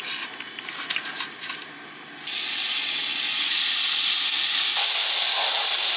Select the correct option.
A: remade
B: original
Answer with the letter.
B